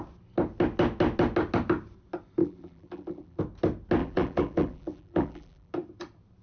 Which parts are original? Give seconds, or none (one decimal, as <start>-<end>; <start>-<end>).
0.0-2.4; 3.4-4.0; 5.7-6.4

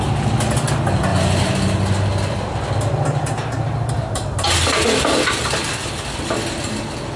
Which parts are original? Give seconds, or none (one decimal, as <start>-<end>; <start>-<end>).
0.0-7.2